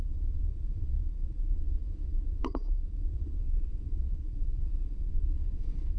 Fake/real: fake